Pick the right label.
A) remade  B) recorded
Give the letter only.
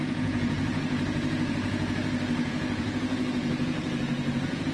A